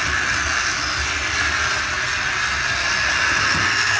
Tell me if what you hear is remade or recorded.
recorded